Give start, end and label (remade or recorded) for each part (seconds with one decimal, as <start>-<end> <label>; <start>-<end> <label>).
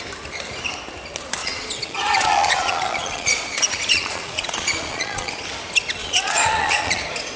0.0-1.4 recorded; 1.4-5.3 remade; 5.3-6.0 recorded; 6.0-7.0 remade; 7.0-7.4 recorded